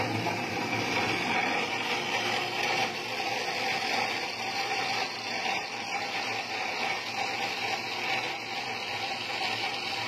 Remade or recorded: remade